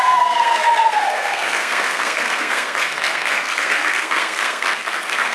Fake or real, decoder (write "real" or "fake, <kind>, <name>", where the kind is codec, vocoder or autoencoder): fake, codec, SNAC